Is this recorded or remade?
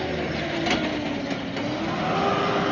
recorded